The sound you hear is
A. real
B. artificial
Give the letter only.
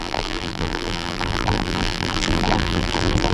B